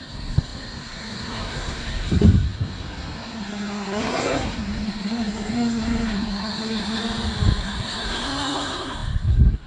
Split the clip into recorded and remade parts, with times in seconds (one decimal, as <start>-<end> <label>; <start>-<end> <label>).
0.0-7.0 remade; 7.0-7.6 recorded; 7.6-9.7 remade